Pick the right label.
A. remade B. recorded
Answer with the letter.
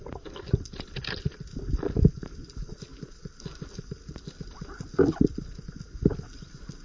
B